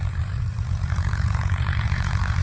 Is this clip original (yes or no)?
no